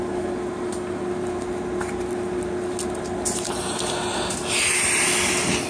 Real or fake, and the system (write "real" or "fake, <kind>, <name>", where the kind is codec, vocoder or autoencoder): real